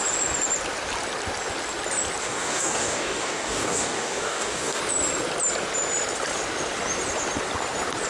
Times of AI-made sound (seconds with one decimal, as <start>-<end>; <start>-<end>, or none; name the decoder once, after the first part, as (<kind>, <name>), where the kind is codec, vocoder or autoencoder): 2.2-4.8 (codec, DAC)